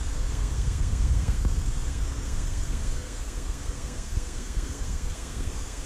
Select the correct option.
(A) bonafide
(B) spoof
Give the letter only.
B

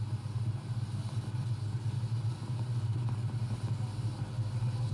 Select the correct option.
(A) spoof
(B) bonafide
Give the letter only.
B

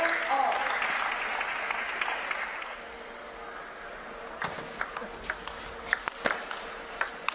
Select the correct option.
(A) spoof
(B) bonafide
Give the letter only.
B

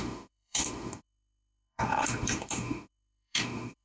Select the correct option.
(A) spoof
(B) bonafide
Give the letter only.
A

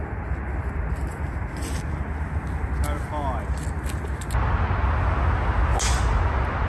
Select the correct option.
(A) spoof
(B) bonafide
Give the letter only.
B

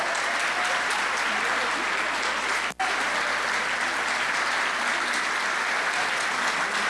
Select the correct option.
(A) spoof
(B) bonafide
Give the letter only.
B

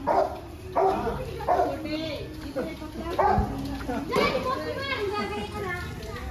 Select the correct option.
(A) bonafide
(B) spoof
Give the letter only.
A